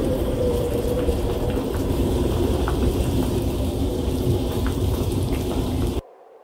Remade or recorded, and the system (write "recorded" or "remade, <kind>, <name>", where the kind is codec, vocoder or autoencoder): remade, vocoder, BigVGAN v2